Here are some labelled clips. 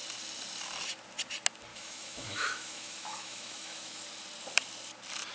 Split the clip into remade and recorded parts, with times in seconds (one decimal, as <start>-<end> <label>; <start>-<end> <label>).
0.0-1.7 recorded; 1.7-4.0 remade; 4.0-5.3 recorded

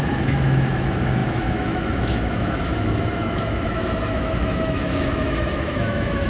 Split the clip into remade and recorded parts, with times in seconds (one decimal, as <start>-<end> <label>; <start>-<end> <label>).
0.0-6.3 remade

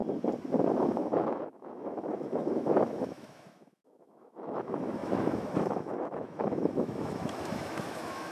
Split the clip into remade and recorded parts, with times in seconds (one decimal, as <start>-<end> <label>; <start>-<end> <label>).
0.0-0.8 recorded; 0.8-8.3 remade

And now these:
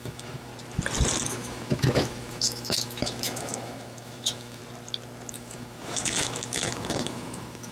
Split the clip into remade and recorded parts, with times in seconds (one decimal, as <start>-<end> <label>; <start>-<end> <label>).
0.0-0.5 remade; 0.5-1.3 recorded; 1.3-4.6 remade; 4.6-5.3 recorded; 5.3-7.7 remade